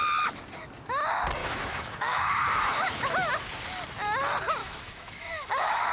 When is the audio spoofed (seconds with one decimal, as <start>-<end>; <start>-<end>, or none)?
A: 1.4-3.3; 4.6-5.9